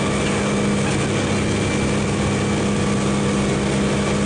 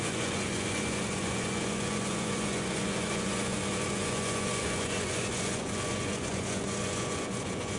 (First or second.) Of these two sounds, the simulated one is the second